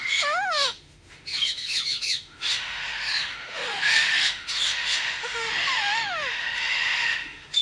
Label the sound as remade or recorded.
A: remade